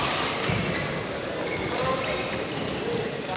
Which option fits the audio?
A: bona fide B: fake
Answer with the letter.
A